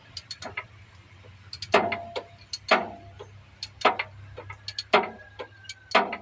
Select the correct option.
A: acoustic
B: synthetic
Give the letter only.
A